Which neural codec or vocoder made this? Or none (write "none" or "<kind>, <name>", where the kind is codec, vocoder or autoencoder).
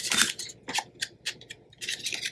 vocoder, BigVGAN v2